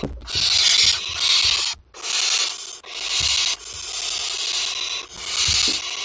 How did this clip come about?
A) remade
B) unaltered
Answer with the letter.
B